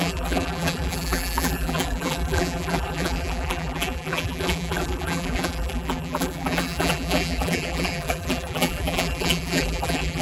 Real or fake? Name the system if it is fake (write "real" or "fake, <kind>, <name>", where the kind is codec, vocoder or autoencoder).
fake, vocoder, BigVGAN v2